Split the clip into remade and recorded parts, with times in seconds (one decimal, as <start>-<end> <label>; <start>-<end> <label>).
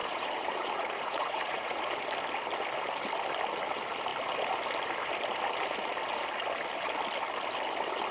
0.0-1.8 remade; 1.8-8.1 recorded